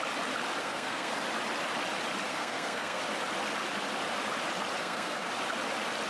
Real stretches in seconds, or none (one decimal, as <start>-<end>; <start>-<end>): 0.0-0.6; 1.1-2.3; 3.0-4.8; 5.3-6.1